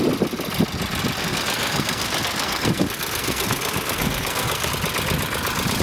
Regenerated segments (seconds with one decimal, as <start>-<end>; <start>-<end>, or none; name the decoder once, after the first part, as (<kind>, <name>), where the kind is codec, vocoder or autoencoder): 1.2-4.7 (codec, SNAC)

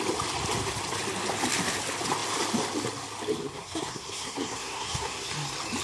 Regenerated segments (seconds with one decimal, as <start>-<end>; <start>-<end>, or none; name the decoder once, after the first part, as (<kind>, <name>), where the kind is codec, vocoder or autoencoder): 3.4-5.3 (codec, SNAC)

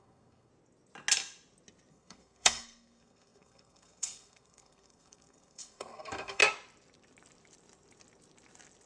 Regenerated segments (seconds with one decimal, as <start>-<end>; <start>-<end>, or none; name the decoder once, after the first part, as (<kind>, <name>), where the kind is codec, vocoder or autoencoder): 0.0-0.5 (codec, SNAC); 1.9-6.4

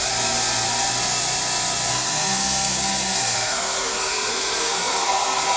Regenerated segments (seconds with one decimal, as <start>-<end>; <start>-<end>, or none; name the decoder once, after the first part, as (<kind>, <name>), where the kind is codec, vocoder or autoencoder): 1.9-5.6 (codec, SNAC)